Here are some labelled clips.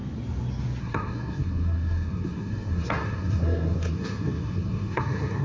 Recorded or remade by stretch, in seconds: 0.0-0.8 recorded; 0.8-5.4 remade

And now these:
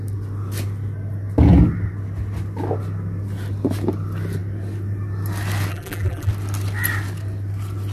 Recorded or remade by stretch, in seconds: 0.0-5.7 recorded; 5.7-6.3 remade; 6.3-7.9 recorded

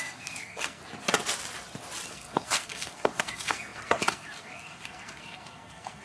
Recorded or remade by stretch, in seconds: 0.0-0.8 remade; 0.8-2.1 recorded; 2.1-6.0 remade

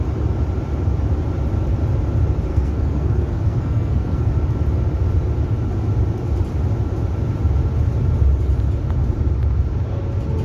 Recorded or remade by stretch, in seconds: 0.0-2.5 recorded; 2.5-4.3 remade; 4.3-10.4 recorded

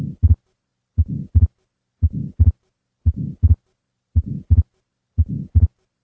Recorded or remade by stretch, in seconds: 0.0-6.0 recorded

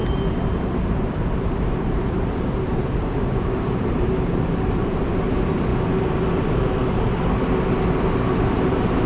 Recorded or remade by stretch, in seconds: 0.0-5.0 remade; 5.0-9.1 recorded

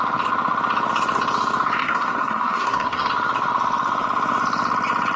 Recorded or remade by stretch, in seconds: 0.0-1.8 recorded; 1.8-3.1 remade; 3.1-5.2 recorded